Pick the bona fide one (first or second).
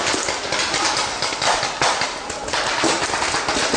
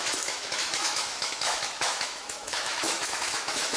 first